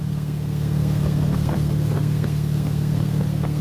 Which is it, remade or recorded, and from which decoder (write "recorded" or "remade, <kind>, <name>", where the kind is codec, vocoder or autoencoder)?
remade, codec, SNAC